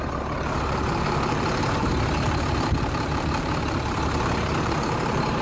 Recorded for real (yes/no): no